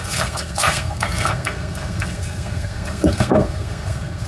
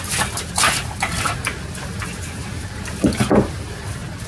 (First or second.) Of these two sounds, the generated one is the first